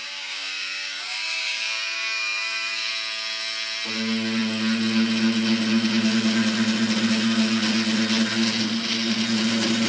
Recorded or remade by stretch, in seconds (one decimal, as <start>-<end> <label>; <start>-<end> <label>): 0.0-2.9 remade; 2.9-9.9 recorded